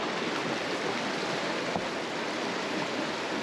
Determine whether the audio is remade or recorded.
recorded